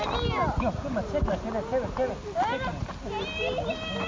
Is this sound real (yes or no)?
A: yes